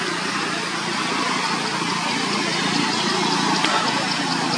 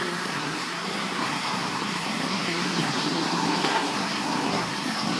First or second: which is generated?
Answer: second